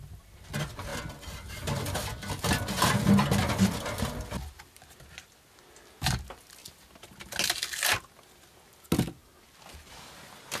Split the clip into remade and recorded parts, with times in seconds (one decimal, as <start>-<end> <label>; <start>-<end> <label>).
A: 0.0-10.6 recorded